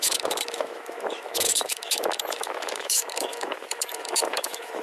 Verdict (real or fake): fake